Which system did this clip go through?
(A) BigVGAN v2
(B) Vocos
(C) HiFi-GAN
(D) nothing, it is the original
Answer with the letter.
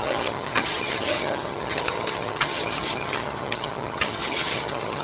C